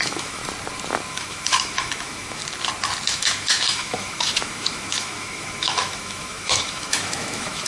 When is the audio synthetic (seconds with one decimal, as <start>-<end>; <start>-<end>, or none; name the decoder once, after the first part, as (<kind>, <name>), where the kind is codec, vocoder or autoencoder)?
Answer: 0.0-0.4 (autoencoder, DAC-VAE); 1.1-2.4; 3.1-7.7